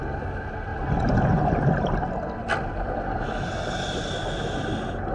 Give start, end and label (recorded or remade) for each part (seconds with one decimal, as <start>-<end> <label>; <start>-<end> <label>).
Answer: 0.0-5.1 recorded